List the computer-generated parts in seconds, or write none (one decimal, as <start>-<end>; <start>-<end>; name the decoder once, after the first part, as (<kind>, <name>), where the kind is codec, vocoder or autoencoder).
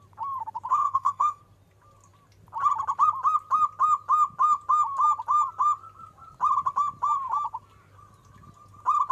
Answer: 0.7-1.4 (codec, SNAC)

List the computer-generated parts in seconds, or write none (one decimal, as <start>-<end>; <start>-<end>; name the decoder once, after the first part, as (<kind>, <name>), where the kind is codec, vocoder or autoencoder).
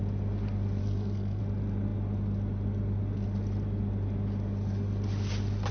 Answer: 0.8-1.4 (codec, SNAC)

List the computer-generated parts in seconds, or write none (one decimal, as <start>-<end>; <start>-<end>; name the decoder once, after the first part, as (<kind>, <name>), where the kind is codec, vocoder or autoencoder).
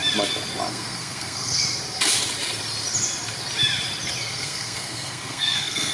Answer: 0.7-1.6 (codec, SNAC); 4.3-5.9